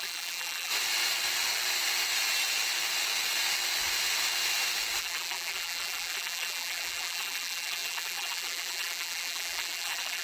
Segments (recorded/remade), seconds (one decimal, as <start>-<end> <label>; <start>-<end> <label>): 0.0-0.7 remade; 0.7-5.0 recorded; 5.0-10.2 remade